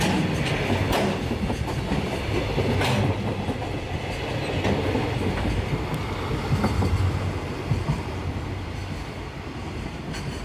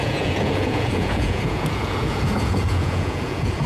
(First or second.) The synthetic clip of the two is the second